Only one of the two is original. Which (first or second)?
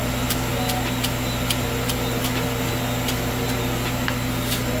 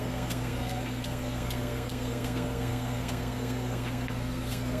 first